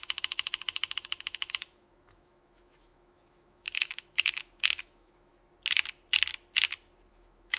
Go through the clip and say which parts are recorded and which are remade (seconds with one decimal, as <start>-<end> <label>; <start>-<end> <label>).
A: 0.0-5.3 remade; 5.3-7.1 recorded; 7.1-7.6 remade